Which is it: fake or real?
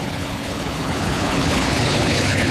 fake